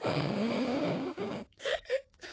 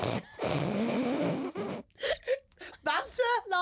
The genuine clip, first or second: second